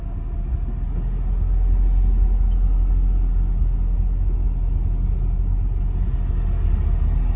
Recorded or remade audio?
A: recorded